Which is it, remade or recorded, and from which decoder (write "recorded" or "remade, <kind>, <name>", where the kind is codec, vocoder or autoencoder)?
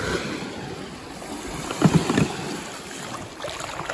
recorded